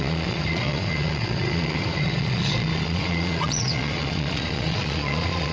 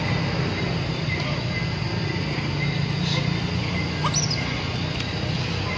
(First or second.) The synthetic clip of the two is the first